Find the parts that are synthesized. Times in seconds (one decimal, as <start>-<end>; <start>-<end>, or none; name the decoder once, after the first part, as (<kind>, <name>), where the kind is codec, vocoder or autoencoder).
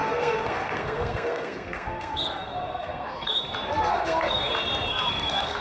0.0-3.4 (codec, SNAC); 3.8-4.4; 4.9-5.6